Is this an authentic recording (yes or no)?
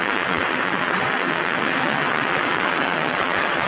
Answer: no